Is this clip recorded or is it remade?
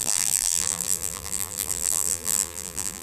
remade